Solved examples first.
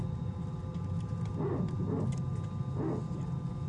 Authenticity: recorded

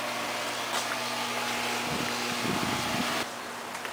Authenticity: recorded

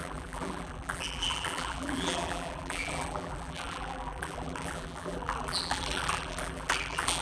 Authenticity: remade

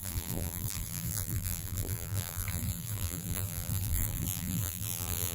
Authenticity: remade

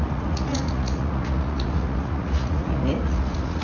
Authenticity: remade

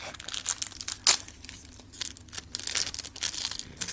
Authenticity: recorded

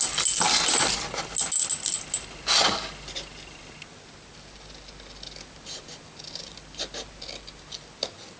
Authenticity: recorded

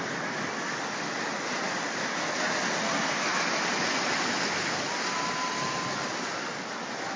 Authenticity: recorded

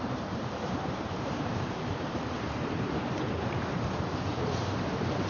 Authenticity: remade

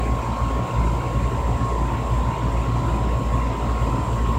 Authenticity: recorded